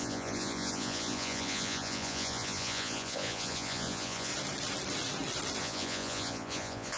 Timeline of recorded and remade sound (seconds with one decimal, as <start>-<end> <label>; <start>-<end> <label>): 0.0-4.3 remade; 4.3-5.6 recorded; 5.6-7.0 remade